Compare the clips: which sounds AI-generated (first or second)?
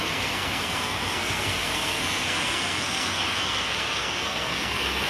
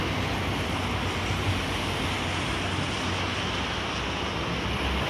first